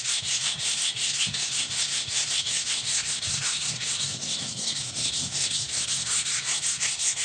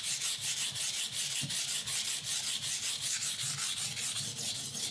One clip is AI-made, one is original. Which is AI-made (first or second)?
first